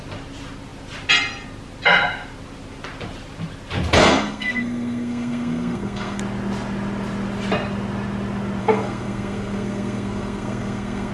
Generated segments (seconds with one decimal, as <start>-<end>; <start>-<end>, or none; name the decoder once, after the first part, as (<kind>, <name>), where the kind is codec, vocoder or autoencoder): 4.0-6.2 (codec, SNAC); 8.6-11.1